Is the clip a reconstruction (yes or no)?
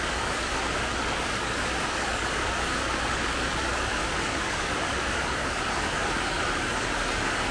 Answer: yes